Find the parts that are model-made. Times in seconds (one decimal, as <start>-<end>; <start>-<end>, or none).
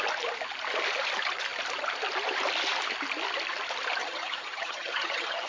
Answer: 4.0-5.5